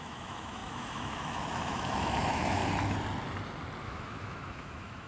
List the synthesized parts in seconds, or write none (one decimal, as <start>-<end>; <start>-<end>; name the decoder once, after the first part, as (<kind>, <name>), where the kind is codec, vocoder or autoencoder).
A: 0.0-2.6 (autoencoder, DAC-VAE); 3.8-5.1